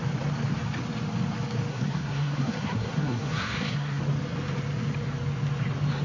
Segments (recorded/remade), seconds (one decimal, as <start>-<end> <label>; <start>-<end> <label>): 0.0-1.7 recorded; 1.7-4.0 remade; 4.0-6.0 recorded